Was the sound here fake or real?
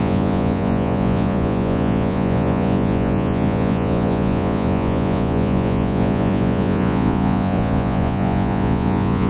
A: fake